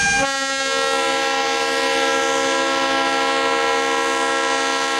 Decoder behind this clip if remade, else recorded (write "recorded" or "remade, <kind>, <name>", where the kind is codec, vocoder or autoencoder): recorded